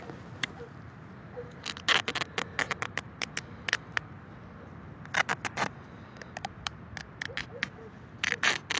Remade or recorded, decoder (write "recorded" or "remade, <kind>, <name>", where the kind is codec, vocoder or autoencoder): recorded